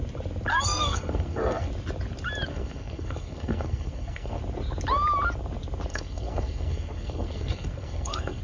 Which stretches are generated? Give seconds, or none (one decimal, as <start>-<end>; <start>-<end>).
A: 0.5-1.7; 2.5-4.4; 5.9-8.4